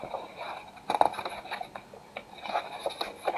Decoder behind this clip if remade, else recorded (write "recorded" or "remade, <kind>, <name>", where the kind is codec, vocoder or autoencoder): recorded